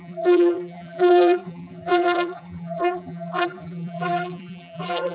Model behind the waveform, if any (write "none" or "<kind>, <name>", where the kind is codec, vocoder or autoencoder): vocoder, BigVGAN v2